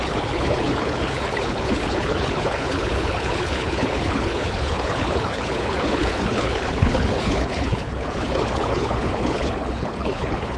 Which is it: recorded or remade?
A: remade